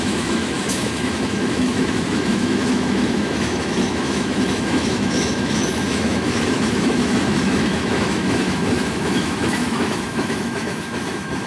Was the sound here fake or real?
fake